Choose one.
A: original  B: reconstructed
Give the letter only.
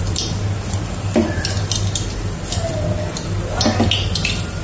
A